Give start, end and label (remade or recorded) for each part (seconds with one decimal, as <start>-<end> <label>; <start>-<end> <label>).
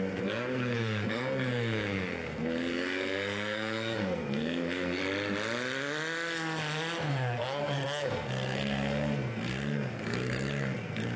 0.0-5.0 remade; 5.0-7.1 recorded; 7.1-11.2 remade